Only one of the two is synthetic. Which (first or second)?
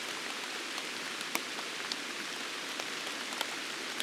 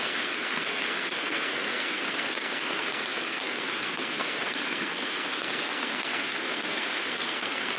second